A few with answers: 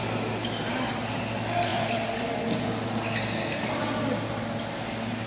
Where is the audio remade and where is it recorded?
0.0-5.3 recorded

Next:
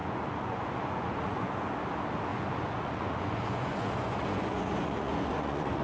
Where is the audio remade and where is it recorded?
0.0-1.5 remade; 1.5-2.3 recorded; 2.3-5.8 remade

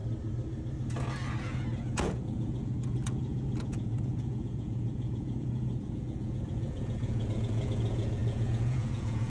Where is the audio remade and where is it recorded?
0.0-1.4 recorded; 1.4-9.3 remade

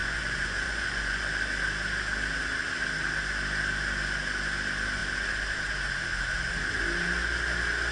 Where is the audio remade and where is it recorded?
0.0-1.2 remade; 1.2-7.9 recorded

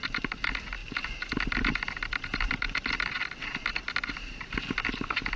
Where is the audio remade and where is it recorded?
0.0-5.4 recorded